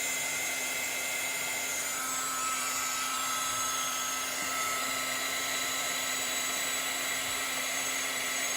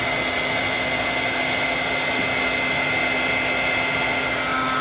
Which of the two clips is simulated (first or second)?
first